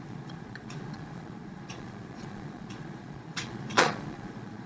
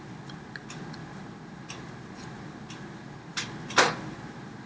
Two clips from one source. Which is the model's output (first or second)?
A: first